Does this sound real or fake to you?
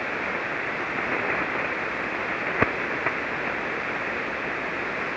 real